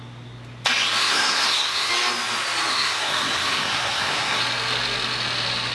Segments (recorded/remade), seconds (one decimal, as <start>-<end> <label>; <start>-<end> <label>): 0.0-1.0 recorded; 1.0-1.9 remade; 1.9-2.7 recorded; 2.7-4.4 remade; 4.4-5.7 recorded